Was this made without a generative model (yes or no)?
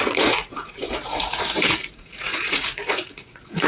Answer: no